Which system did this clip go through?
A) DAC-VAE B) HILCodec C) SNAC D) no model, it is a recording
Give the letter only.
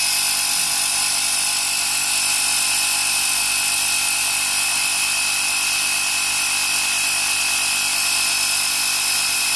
D